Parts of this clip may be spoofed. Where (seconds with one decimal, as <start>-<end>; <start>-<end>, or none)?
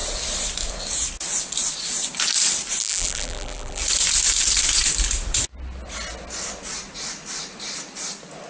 2.8-3.8